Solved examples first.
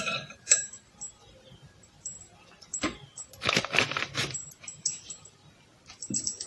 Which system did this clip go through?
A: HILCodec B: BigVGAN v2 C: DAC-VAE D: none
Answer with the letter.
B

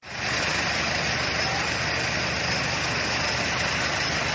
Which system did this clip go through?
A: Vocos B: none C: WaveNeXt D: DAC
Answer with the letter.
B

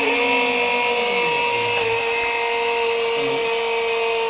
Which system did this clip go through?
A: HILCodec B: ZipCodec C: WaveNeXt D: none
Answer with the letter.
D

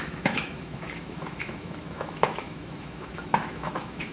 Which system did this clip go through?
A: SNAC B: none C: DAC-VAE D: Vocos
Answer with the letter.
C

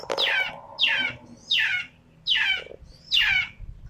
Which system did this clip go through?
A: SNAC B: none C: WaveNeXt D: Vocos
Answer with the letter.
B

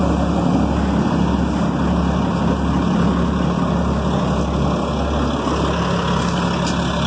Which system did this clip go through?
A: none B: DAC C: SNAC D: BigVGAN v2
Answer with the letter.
A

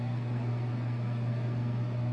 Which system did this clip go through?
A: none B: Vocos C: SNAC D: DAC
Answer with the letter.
C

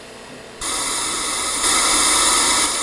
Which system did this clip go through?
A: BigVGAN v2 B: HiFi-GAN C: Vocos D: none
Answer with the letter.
A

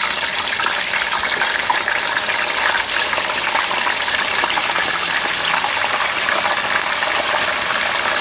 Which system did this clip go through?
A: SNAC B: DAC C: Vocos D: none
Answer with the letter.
D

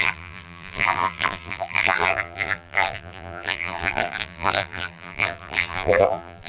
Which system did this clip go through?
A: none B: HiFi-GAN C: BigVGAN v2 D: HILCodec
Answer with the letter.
C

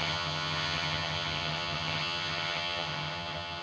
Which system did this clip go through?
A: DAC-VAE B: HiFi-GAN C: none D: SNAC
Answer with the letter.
B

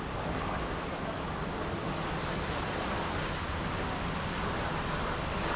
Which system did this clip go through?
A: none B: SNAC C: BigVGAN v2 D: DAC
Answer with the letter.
A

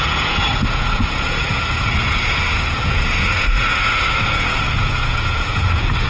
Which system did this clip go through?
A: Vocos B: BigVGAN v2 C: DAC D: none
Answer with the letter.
A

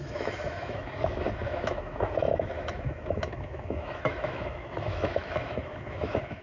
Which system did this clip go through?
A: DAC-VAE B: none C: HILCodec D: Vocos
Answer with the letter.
A